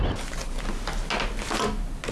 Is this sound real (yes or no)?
yes